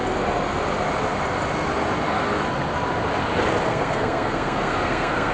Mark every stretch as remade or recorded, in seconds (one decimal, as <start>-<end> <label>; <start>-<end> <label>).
0.0-3.7 recorded; 3.7-5.3 remade